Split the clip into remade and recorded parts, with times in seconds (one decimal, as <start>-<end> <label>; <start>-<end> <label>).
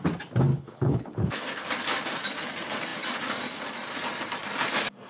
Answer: 0.0-0.5 recorded; 0.5-1.4 remade; 1.4-5.1 recorded